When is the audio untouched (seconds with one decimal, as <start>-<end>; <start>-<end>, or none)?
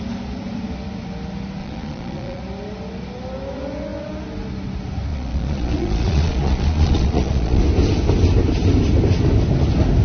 0.0-1.6; 2.4-5.1; 7.6-10.0